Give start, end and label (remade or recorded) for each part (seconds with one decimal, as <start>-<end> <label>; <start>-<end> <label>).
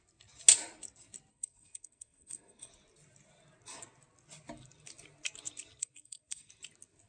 0.0-1.3 recorded; 1.3-2.7 remade; 2.7-5.8 recorded; 5.8-6.5 remade; 6.5-7.1 recorded